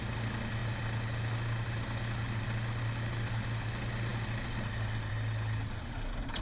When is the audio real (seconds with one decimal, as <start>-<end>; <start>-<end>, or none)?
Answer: 0.0-6.4